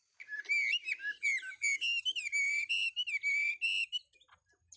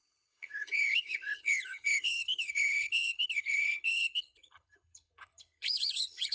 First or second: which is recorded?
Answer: first